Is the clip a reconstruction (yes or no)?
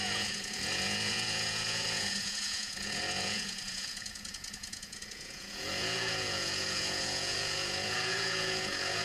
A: yes